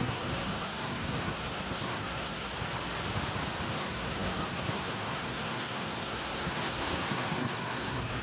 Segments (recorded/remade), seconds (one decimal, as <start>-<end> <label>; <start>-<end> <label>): 0.0-2.5 remade; 2.5-3.7 recorded; 3.7-8.2 remade